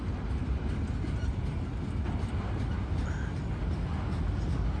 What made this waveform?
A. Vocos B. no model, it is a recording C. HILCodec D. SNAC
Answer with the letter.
B